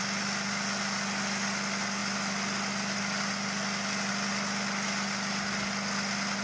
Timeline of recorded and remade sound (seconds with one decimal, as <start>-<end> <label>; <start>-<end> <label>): 0.0-6.4 recorded